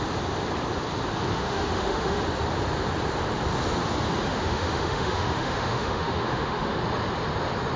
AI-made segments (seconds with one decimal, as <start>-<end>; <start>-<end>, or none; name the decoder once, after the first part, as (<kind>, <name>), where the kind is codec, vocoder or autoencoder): 1.3-2.2 (autoencoder, DAC-VAE); 4.3-6.8